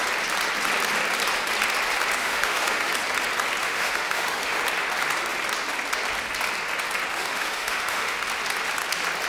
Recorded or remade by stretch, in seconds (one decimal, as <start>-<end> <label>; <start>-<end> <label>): 0.0-2.2 recorded; 2.2-2.9 remade; 2.9-3.6 recorded; 3.6-4.6 remade; 4.6-7.1 recorded; 7.1-8.2 remade; 8.2-9.3 recorded